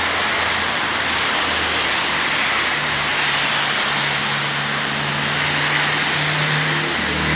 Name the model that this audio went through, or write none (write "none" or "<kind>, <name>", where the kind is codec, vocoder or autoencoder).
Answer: none